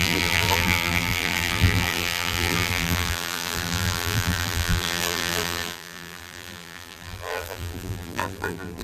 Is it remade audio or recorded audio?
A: remade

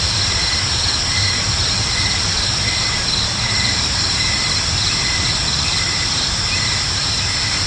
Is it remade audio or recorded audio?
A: remade